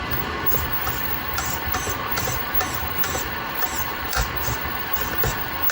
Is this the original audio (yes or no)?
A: no